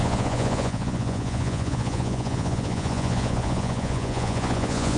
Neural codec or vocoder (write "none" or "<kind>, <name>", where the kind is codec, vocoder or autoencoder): vocoder, Vocos